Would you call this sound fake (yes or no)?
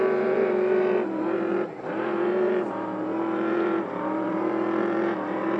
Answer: yes